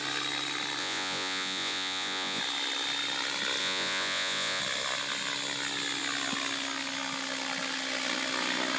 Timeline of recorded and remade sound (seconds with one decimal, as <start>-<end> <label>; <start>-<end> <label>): 0.0-0.8 recorded; 0.8-2.4 remade; 2.4-3.6 recorded; 3.6-4.6 remade; 4.6-8.8 recorded